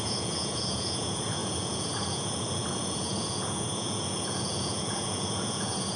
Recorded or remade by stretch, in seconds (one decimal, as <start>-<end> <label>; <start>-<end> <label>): 0.0-6.0 remade